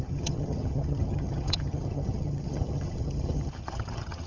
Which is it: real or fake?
fake